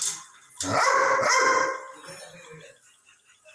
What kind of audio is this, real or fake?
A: real